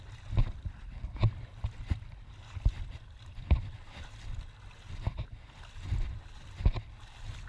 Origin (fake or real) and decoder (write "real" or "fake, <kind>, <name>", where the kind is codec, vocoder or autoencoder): real